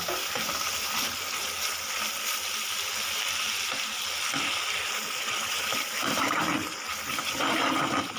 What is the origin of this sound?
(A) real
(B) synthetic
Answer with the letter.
A